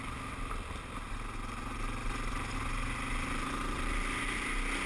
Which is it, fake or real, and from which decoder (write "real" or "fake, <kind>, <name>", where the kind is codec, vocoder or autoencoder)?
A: real